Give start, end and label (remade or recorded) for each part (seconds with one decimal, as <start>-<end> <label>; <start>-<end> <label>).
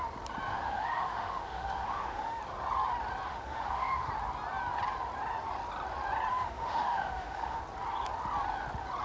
0.0-0.5 recorded; 0.5-2.4 remade; 2.4-3.3 recorded; 3.3-4.1 remade; 4.1-6.3 recorded; 6.3-7.6 remade; 7.6-9.0 recorded